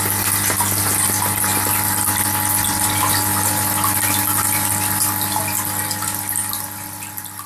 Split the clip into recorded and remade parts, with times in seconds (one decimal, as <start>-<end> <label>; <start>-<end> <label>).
0.0-7.5 recorded